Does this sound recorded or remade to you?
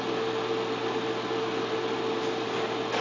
recorded